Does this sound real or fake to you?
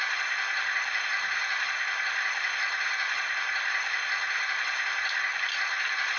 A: real